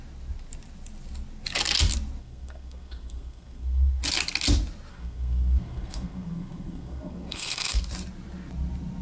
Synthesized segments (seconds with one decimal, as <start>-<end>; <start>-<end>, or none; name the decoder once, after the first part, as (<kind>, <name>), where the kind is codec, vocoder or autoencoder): 2.2-4.0 (codec, SNAC); 4.9-7.8